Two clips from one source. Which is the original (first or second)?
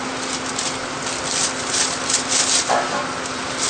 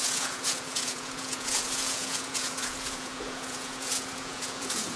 first